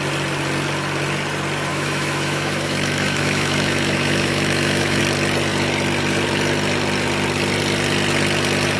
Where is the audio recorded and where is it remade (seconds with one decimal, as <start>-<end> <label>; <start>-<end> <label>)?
0.0-1.7 recorded; 1.7-5.0 remade; 5.0-8.8 recorded